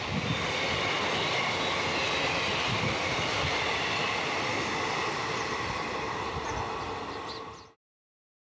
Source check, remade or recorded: recorded